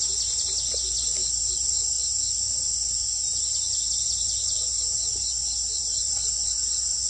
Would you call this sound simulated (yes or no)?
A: no